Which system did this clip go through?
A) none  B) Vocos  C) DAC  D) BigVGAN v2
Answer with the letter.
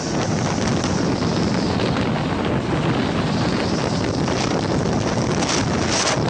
A